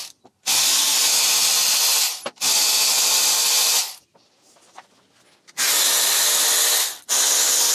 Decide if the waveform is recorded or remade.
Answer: recorded